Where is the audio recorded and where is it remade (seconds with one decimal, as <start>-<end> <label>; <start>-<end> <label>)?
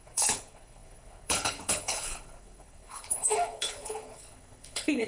0.0-5.1 remade